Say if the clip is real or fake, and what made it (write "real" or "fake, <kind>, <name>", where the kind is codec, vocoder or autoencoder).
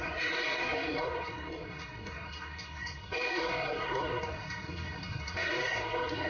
fake, codec, SNAC